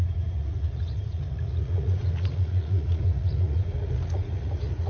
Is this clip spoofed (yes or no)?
yes